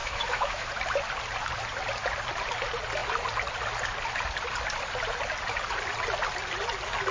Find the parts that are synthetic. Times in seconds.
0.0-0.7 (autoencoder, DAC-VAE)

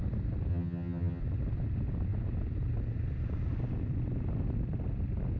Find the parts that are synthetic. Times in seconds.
0.5-1.2 (vocoder, HiFi-GAN)

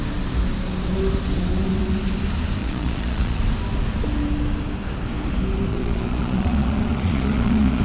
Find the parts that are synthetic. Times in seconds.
2.6-3.4 (vocoder, Vocos); 5.7-7.8

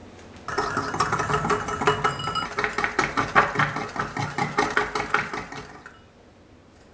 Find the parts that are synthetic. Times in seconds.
none

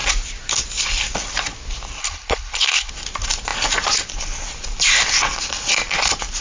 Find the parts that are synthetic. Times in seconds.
2.0-2.9 (codec, HILCodec)